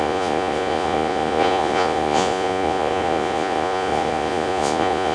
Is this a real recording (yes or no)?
no